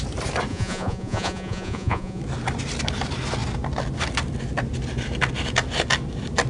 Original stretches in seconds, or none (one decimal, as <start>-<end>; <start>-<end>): 0.0-0.5; 2.2-6.5